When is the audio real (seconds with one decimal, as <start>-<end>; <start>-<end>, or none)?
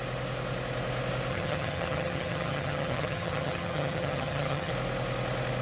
0.0-1.3; 4.7-5.6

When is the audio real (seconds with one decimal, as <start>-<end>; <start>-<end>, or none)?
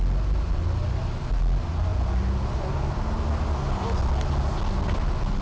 0.0-5.4